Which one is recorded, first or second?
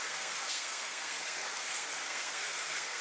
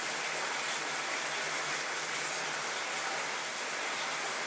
second